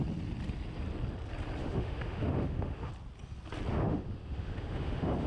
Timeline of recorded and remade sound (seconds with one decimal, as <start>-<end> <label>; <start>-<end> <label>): 0.0-1.6 recorded; 1.6-2.9 remade; 2.9-3.7 recorded; 3.7-5.3 remade